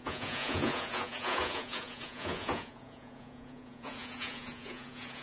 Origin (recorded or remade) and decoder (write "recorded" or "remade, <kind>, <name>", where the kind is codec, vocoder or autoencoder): remade, vocoder, Vocos